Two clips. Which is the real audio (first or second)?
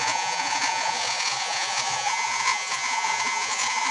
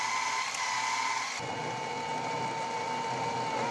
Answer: second